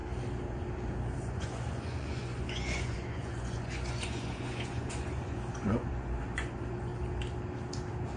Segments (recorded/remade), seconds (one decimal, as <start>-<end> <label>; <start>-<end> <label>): 0.0-1.2 recorded; 1.2-6.9 remade; 6.9-8.2 recorded